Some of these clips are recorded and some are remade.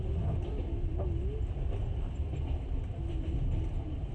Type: recorded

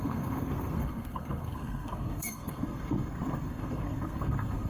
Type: remade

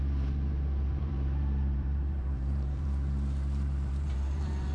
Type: remade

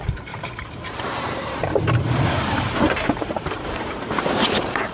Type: remade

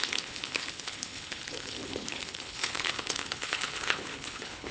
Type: remade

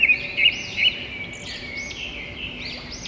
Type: recorded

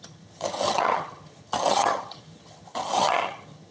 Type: remade